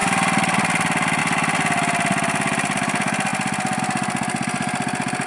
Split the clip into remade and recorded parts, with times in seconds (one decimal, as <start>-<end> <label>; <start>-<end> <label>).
0.0-5.3 recorded